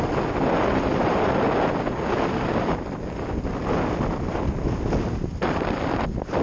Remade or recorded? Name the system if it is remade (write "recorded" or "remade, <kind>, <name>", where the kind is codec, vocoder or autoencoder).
recorded